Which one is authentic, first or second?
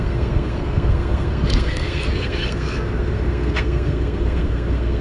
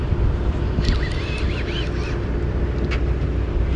second